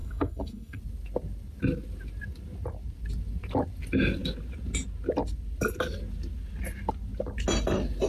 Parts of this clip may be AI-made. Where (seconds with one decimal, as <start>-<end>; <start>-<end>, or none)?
0.0-0.8